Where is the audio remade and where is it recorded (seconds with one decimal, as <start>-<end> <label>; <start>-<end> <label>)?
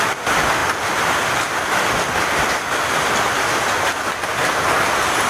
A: 0.0-5.3 recorded